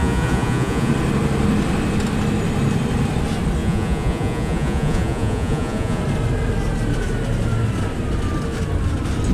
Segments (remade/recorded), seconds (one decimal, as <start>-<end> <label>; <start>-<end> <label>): 0.0-0.9 remade; 0.9-3.6 recorded; 3.6-6.0 remade; 6.0-9.3 recorded